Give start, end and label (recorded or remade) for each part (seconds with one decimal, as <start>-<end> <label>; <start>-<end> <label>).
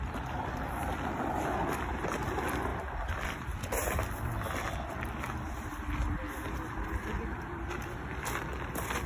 0.0-9.1 recorded